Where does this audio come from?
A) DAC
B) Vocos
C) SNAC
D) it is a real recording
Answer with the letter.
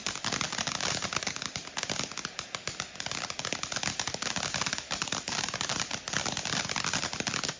D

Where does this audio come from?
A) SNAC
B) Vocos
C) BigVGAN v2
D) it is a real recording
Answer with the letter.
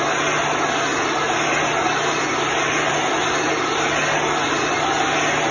D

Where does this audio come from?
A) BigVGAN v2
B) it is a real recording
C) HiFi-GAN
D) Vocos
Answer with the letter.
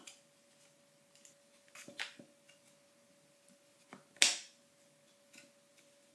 B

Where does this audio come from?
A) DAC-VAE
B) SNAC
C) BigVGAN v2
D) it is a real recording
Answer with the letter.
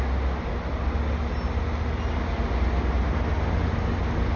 D